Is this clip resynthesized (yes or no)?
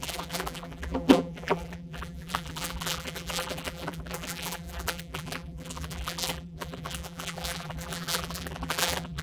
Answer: yes